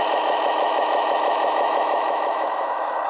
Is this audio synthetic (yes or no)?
yes